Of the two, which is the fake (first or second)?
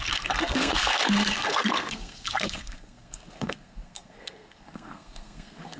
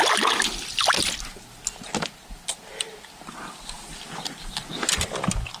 first